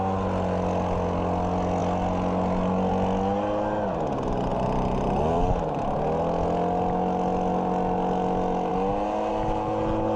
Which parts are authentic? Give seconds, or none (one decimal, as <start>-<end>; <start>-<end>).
0.0-10.2